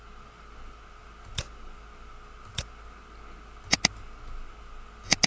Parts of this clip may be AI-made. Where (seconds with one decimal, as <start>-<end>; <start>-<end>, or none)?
none